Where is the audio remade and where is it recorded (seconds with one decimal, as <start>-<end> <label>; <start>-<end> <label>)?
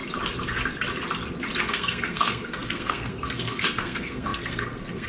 0.0-1.6 recorded; 1.6-5.1 remade